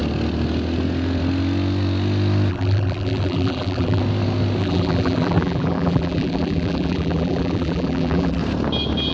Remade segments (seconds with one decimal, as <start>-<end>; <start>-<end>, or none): 2.5-4.0; 4.6-8.4